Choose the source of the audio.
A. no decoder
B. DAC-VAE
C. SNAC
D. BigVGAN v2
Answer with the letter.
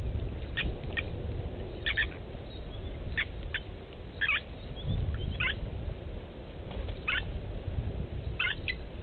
A